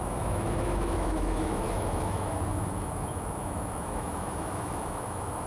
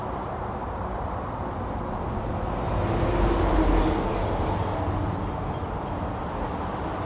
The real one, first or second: second